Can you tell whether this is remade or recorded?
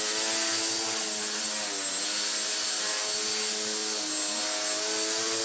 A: recorded